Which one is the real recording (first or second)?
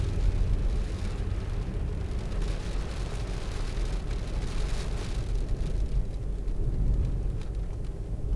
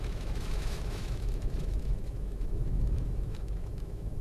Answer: first